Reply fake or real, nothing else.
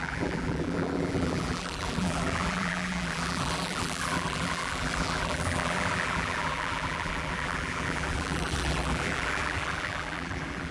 fake